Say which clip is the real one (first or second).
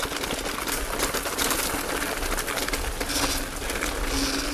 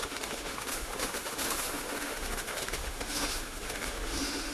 first